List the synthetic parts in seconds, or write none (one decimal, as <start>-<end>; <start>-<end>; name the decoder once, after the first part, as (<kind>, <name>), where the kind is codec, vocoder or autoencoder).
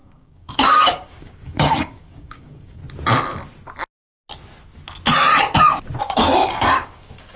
0.0-2.8 (codec, DAC); 6.0-7.4